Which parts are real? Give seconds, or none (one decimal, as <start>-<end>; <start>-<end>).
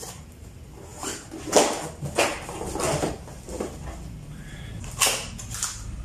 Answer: 0.0-6.0